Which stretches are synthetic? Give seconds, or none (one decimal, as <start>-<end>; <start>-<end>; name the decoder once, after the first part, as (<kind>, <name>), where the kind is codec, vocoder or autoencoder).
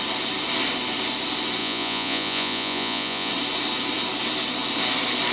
1.6-3.3 (vocoder, Vocos)